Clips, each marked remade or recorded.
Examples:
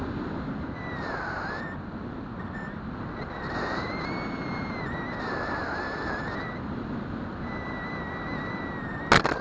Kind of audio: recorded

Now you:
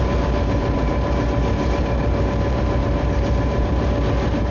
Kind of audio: remade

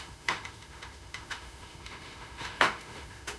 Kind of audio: remade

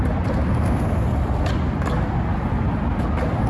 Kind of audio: recorded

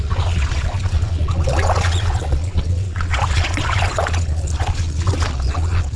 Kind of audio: remade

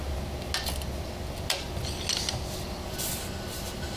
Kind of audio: recorded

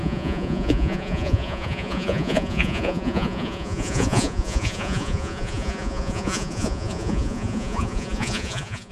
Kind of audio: remade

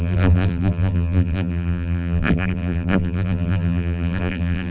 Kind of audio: remade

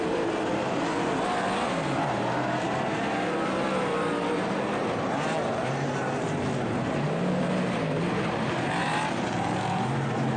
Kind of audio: remade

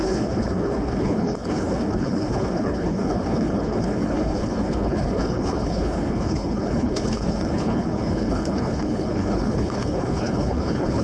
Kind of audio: remade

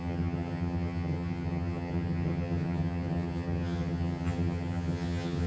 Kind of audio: remade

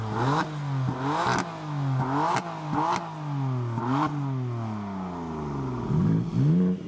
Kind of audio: recorded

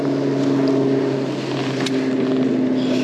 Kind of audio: recorded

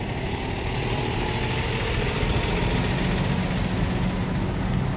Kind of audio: recorded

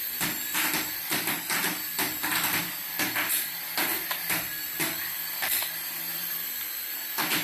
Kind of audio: remade